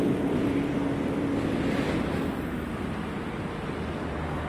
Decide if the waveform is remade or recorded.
recorded